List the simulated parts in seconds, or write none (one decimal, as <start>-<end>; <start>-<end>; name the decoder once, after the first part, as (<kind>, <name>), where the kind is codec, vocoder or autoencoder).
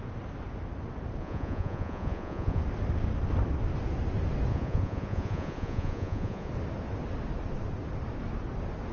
1.2-2.6 (vocoder, Vocos); 4.5-6.5